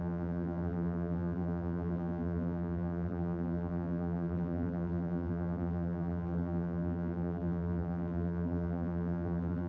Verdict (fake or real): fake